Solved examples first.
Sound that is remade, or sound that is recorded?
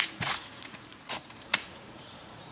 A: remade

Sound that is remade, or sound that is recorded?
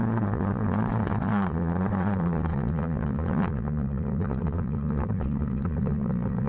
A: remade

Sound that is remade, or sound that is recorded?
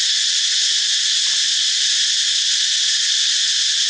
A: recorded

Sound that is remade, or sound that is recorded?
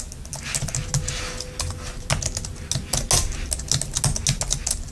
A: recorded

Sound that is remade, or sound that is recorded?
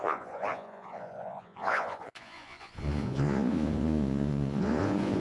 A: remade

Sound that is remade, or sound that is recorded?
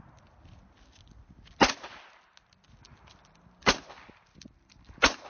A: recorded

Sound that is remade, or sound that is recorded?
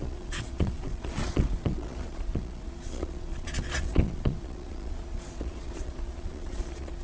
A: remade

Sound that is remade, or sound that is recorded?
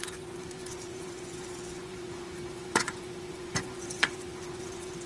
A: remade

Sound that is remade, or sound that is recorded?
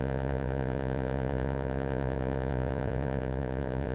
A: remade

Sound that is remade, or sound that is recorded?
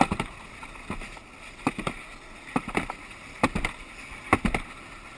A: recorded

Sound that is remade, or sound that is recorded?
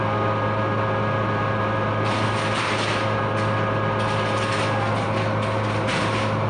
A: recorded